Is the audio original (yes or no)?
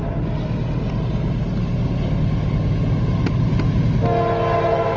yes